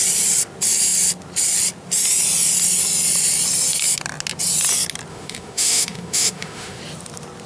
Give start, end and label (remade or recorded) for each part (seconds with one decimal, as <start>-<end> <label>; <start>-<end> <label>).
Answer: 0.0-5.1 recorded; 5.1-6.8 remade; 6.8-7.5 recorded